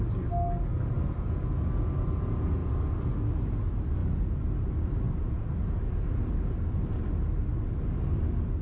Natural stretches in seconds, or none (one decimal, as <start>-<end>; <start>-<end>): 0.0-8.6